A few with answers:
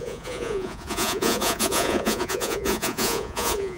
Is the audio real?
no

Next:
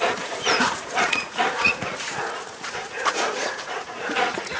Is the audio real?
no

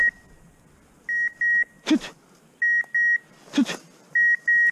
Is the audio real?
yes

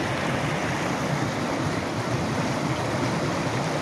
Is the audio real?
yes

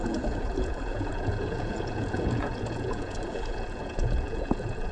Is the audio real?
no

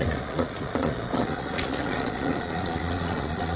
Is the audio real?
no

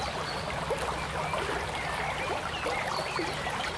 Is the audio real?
yes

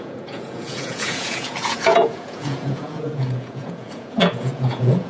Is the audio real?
no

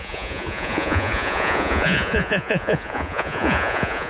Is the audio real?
no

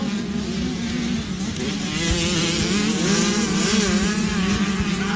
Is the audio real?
yes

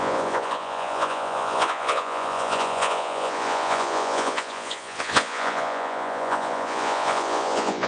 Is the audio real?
no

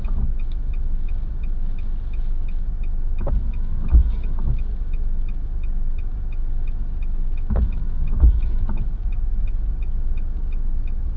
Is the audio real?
yes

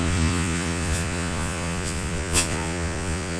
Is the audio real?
no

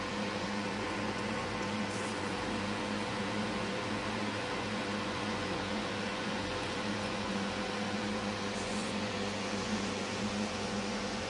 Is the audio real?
no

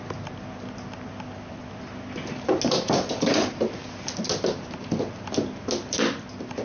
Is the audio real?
yes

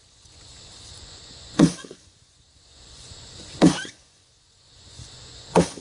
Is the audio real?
no